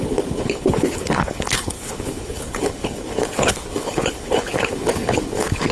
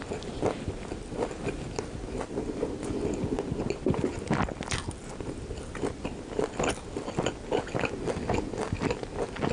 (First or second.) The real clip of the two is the second